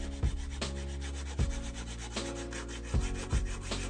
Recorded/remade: recorded